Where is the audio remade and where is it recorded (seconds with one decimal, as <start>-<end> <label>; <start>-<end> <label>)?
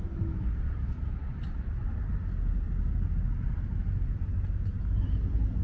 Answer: 0.0-1.2 recorded; 1.2-2.1 remade; 2.1-5.6 recorded